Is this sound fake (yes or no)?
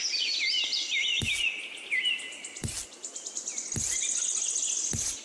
no